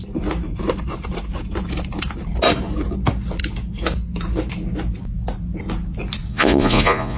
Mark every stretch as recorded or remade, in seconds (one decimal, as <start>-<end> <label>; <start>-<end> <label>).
0.0-6.3 recorded; 6.3-7.2 remade